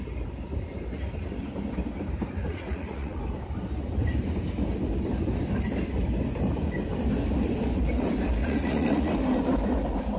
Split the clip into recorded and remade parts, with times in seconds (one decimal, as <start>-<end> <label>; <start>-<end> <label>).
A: 0.0-2.4 recorded; 2.4-3.2 remade; 3.2-8.4 recorded; 8.4-9.1 remade; 9.1-10.2 recorded